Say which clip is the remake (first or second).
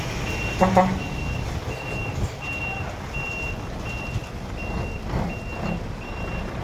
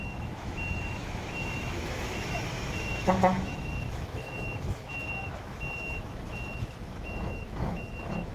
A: second